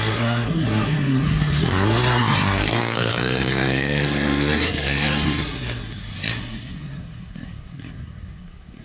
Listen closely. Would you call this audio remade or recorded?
remade